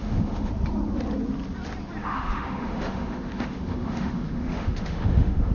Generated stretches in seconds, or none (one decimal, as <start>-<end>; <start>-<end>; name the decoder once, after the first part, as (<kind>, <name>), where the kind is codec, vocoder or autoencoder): 0.0-0.5 (autoencoder, DAC-VAE); 2.0-5.5